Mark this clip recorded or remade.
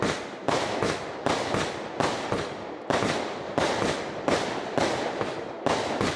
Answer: recorded